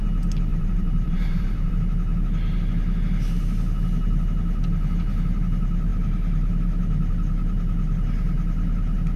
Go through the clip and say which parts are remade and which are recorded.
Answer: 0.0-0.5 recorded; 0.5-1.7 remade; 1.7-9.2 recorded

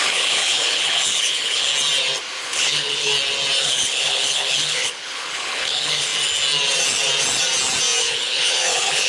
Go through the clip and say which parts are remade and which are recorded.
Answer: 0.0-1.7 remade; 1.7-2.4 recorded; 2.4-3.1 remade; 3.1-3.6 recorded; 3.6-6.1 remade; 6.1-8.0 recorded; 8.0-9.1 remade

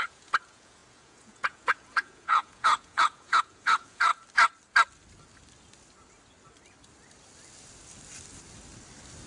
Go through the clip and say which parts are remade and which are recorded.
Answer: 0.0-4.1 remade; 4.1-9.3 recorded

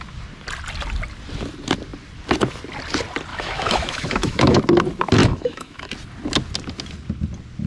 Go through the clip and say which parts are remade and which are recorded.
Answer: 0.0-3.3 recorded; 3.3-4.6 remade; 4.6-5.2 recorded; 5.2-5.9 remade; 5.9-7.7 recorded

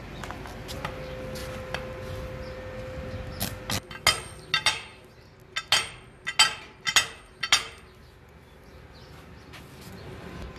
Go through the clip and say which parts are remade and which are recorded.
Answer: 0.0-10.6 recorded

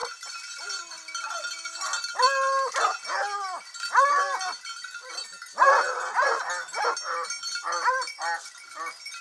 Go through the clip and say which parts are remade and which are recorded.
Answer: 0.0-9.2 recorded

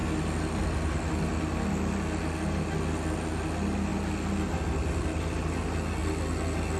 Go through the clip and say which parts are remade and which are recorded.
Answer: 0.0-6.8 recorded

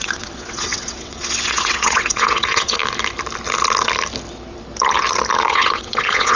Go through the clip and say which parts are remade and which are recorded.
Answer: 0.0-2.8 remade; 2.8-5.5 recorded; 5.5-6.4 remade